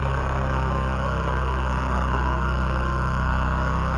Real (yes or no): no